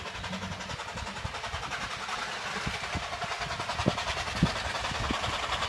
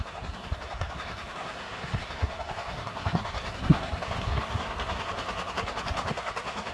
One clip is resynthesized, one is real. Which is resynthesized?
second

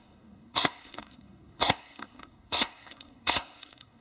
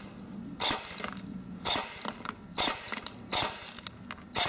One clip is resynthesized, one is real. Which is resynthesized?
first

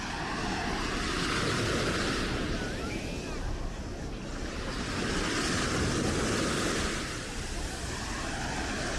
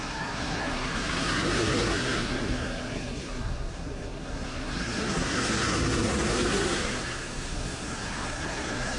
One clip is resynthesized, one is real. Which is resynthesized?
second